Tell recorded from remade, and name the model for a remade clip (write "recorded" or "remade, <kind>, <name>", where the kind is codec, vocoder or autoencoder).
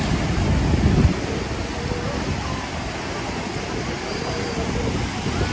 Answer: recorded